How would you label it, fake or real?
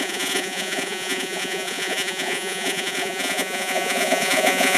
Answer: fake